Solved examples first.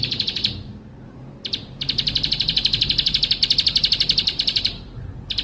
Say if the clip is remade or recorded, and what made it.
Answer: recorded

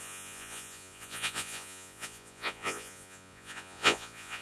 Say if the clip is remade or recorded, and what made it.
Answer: remade, vocoder, Vocos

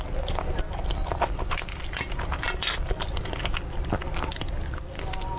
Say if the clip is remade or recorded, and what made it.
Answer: recorded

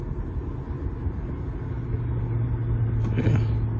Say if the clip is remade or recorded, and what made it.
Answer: recorded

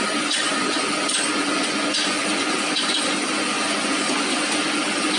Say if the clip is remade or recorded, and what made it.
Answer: remade, vocoder, Vocos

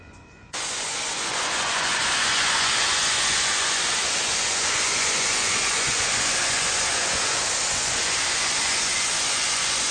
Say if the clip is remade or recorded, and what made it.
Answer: remade, vocoder, Vocos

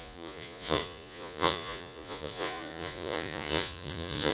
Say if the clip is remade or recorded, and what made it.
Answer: remade, vocoder, Vocos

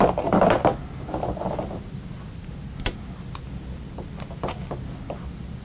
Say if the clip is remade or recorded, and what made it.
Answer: recorded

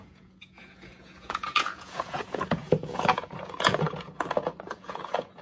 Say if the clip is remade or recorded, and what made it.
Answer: remade, vocoder, Vocos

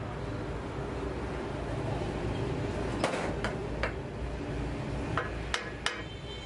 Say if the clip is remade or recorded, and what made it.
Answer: recorded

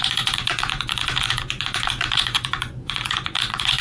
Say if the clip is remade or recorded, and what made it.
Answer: remade, vocoder, Vocos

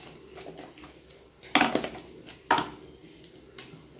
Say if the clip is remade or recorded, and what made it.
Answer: recorded